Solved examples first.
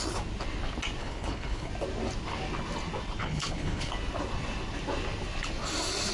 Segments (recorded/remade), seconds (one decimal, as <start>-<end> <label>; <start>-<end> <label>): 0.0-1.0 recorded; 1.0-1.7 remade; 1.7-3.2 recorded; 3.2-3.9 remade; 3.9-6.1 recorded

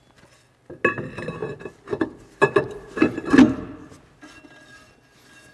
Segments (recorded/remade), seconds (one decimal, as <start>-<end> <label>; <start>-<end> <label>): 0.0-5.5 recorded

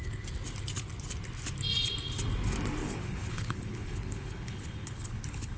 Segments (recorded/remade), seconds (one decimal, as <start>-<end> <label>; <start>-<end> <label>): 0.0-2.8 recorded; 2.8-5.6 remade

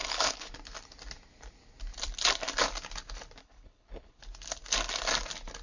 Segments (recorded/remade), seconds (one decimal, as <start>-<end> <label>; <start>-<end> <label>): 0.0-0.5 remade; 0.5-3.4 recorded; 3.4-4.2 remade; 4.2-5.6 recorded